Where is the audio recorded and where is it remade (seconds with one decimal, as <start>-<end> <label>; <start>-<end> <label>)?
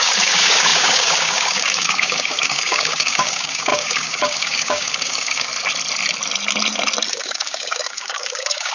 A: 0.0-5.5 remade; 5.5-7.1 recorded; 7.1-8.7 remade